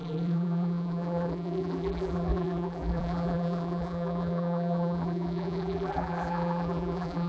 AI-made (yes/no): yes